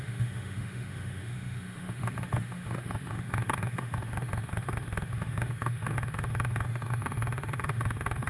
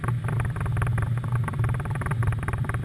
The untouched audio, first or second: second